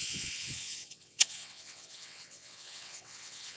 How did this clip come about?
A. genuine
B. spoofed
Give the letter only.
B